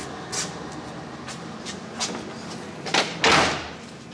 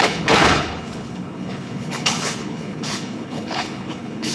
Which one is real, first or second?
first